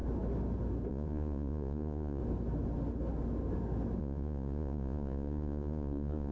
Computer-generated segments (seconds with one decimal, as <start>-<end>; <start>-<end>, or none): 0.9-2.2; 4.0-6.3